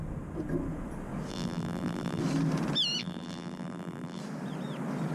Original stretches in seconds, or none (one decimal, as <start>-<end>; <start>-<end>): 0.0-1.3; 2.2-3.0; 4.2-5.1